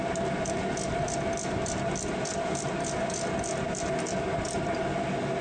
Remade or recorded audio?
recorded